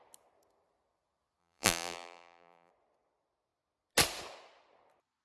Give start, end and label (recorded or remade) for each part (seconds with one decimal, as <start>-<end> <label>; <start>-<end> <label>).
0.0-1.4 recorded; 1.4-2.7 remade; 2.7-5.2 recorded